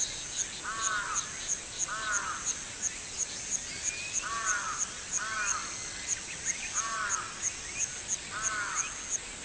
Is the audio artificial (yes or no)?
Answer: no